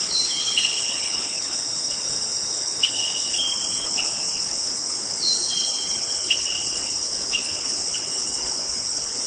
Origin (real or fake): fake